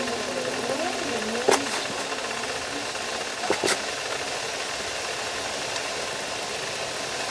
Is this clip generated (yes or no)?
no